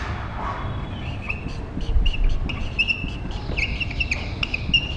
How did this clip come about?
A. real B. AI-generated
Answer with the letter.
A